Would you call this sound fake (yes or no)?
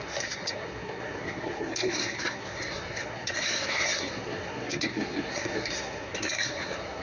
yes